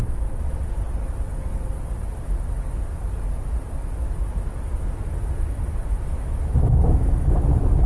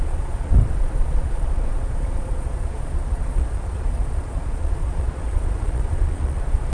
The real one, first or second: first